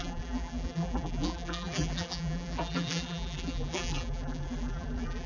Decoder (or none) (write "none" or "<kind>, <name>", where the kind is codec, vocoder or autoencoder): vocoder, BigVGAN v2